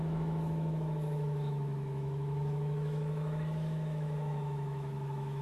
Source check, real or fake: fake